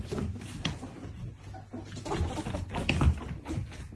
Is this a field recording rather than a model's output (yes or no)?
yes